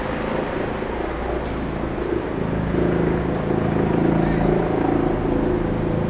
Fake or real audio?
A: real